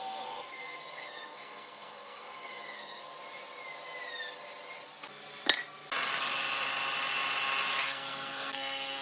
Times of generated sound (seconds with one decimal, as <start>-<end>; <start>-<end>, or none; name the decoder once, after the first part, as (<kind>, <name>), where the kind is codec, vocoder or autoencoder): 0.0-3.1 (codec, SNAC); 7.8-9.0